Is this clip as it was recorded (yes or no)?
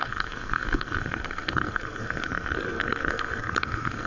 no